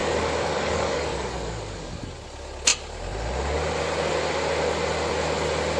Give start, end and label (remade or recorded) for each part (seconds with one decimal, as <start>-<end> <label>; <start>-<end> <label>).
0.0-2.0 remade; 2.0-5.8 recorded